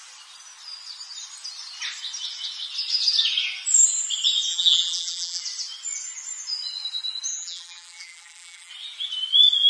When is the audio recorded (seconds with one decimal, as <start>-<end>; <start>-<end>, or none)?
0.0-4.5; 5.4-7.3; 8.7-9.7